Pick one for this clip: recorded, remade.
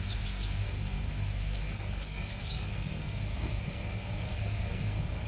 remade